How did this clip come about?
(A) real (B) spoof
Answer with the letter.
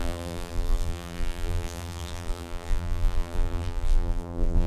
B